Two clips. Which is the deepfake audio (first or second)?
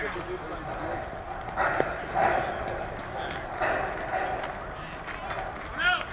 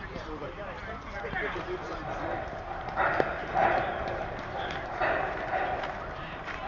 second